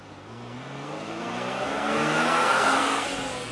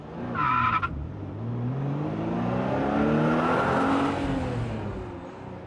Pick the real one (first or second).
second